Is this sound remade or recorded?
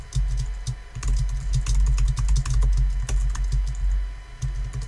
recorded